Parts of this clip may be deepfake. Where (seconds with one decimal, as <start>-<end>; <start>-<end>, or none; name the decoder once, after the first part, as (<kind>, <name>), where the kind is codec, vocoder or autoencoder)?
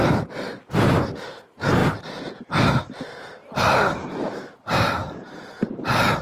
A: none